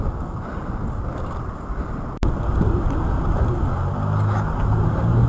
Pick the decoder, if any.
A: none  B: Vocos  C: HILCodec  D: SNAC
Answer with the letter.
A